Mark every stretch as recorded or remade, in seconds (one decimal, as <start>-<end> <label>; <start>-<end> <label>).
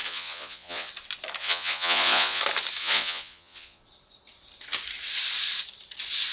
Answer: 0.0-0.9 remade; 0.9-1.4 recorded; 1.4-2.4 remade; 2.4-2.8 recorded; 2.8-3.8 remade; 3.8-6.3 recorded